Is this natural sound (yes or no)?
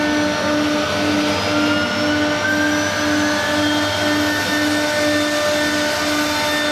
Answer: yes